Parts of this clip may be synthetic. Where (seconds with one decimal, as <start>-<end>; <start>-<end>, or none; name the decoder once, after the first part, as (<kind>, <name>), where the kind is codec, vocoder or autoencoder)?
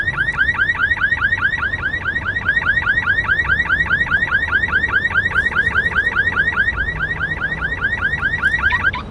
0.8-5.7 (vocoder, BigVGAN v2)